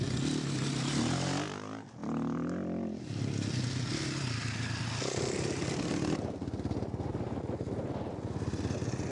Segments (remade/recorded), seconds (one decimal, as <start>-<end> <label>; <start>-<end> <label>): 0.0-9.1 recorded